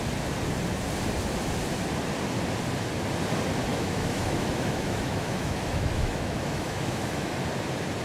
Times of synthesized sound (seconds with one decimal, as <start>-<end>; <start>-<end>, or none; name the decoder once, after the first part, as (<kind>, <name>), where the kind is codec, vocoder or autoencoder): 3.7-7.3 (autoencoder, DAC-VAE)